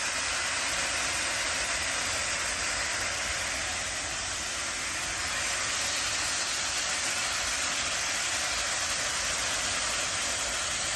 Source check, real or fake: real